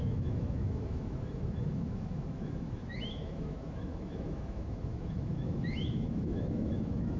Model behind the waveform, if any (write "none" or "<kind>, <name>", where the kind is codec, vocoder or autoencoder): autoencoder, DAC-VAE